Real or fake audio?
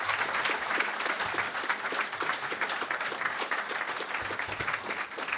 real